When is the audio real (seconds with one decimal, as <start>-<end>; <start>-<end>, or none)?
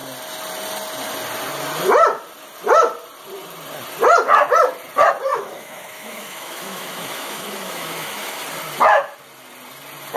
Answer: 0.0-5.3; 8.4-10.2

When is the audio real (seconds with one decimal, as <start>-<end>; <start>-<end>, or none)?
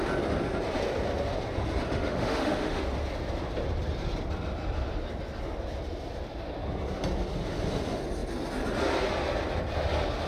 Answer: 0.0-1.9; 2.8-10.3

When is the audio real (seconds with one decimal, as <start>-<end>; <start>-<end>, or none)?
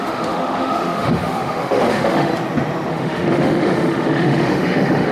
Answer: 2.3-2.9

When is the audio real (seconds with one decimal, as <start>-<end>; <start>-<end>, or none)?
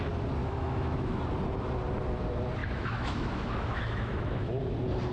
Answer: 0.0-0.4; 1.2-2.6; 4.6-5.1